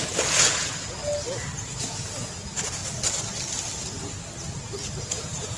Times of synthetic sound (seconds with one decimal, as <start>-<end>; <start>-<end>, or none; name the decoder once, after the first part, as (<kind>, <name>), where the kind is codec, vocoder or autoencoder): 0.0-1.0 (vocoder, Vocos); 1.6-2.8; 5.0-5.6